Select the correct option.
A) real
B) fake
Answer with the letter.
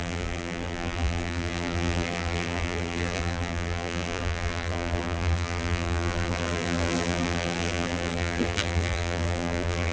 B